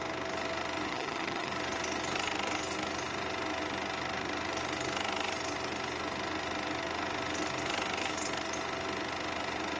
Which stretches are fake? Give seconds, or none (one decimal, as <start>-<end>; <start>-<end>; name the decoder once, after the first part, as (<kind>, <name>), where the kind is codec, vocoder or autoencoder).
0.9-1.5 (vocoder, HiFi-GAN)